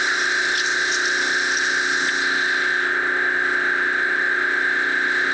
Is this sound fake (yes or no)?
no